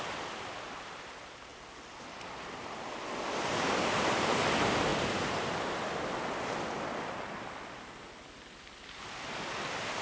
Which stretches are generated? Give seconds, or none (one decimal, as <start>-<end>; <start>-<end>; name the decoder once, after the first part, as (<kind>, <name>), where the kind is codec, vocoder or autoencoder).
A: none